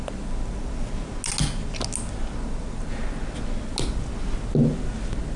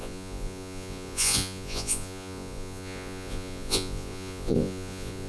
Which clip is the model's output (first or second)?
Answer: second